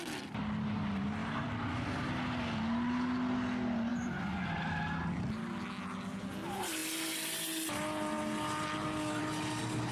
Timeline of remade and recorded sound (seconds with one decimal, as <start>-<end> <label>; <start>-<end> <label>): 0.0-1.2 recorded; 1.2-2.1 remade; 2.1-3.9 recorded; 3.9-4.4 remade; 4.4-9.9 recorded